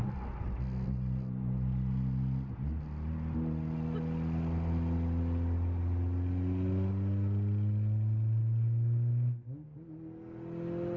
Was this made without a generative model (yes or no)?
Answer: yes